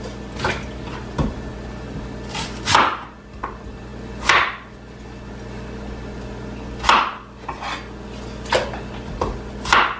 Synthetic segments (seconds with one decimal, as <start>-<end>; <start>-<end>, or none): none